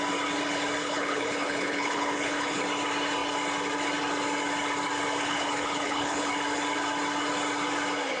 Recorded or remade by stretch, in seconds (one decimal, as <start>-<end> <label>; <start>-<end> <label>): 0.0-0.8 recorded; 0.8-2.6 remade; 2.6-5.2 recorded; 5.2-6.3 remade; 6.3-8.2 recorded